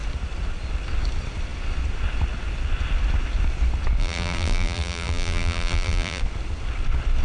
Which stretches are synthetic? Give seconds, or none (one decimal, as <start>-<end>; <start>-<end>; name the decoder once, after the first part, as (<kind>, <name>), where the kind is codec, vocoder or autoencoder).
4.0-6.2 (vocoder, BigVGAN v2)